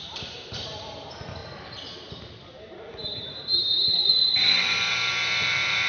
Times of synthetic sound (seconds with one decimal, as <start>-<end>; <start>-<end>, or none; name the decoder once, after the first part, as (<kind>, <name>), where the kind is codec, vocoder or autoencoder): 0.0-1.4 (vocoder, BigVGAN v2); 2.6-5.9